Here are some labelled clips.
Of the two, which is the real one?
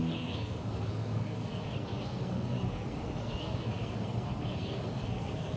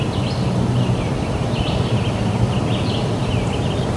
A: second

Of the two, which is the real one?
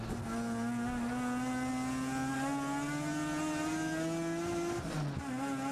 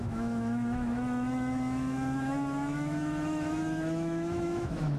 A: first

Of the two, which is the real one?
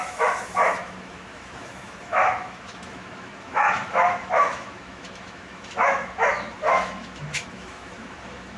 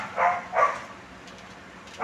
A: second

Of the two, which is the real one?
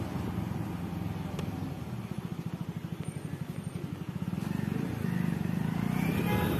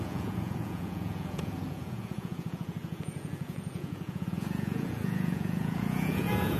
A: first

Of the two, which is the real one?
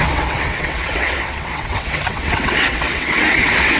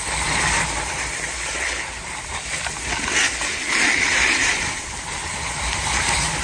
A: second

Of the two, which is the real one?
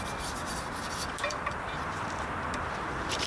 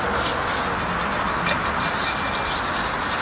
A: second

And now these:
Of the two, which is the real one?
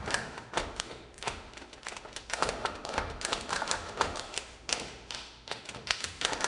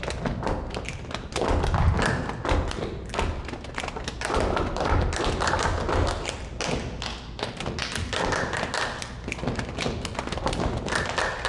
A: second